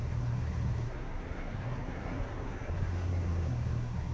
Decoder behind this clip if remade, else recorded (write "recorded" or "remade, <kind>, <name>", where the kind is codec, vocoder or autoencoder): remade, codec, SNAC